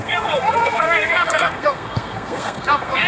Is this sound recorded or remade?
remade